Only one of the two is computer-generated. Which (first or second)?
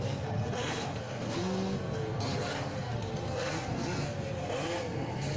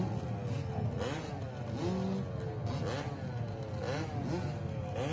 first